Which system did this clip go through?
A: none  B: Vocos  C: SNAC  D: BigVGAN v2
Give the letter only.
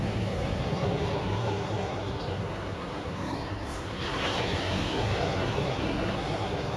C